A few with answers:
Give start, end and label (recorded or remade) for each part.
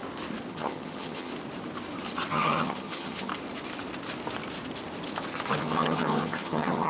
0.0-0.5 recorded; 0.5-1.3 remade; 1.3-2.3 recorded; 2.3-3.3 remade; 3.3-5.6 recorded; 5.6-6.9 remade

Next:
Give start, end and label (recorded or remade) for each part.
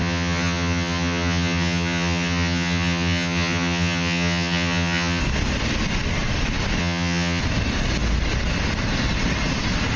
0.0-5.2 remade; 5.2-6.8 recorded; 6.8-7.4 remade; 7.4-10.0 recorded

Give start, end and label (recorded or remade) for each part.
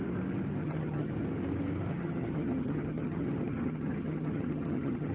0.0-0.6 recorded; 0.6-1.1 remade; 1.1-1.9 recorded; 1.9-5.1 remade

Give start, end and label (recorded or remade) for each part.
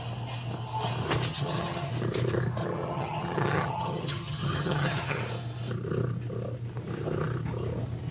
0.0-1.3 recorded; 1.3-1.9 remade; 1.9-2.6 recorded; 2.6-5.2 remade; 5.2-8.1 recorded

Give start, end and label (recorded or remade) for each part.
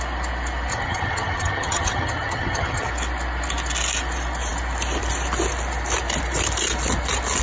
0.0-0.7 recorded; 0.7-2.9 remade; 2.9-7.4 recorded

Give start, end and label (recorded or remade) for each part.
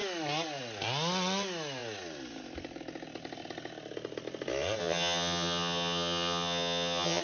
0.0-4.8 recorded; 4.8-7.2 remade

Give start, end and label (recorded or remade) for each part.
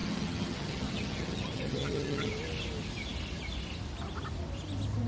0.0-2.3 remade; 2.3-5.1 recorded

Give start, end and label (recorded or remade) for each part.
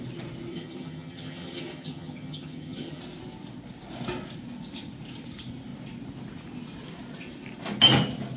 0.0-0.5 recorded; 0.5-3.0 remade; 3.0-8.4 recorded